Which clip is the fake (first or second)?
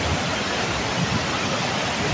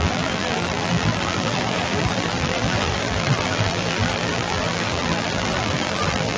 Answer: second